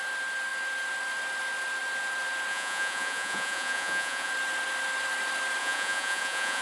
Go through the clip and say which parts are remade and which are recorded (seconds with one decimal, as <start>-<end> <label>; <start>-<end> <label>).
0.0-2.5 recorded; 2.5-4.3 remade; 4.3-5.6 recorded; 5.6-6.6 remade

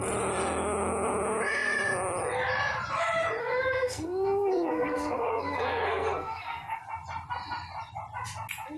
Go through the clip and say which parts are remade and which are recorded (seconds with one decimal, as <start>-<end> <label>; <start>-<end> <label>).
0.0-3.4 recorded; 3.4-6.8 remade; 6.8-8.8 recorded

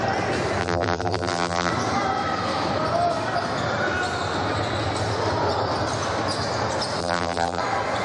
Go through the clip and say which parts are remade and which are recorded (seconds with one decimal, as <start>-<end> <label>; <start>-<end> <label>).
0.0-0.6 recorded; 0.6-1.7 remade; 1.7-7.0 recorded; 7.0-7.6 remade; 7.6-8.0 recorded

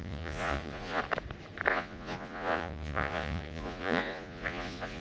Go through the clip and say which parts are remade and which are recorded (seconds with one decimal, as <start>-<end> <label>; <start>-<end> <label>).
0.0-1.0 remade; 1.0-1.7 recorded; 1.7-5.0 remade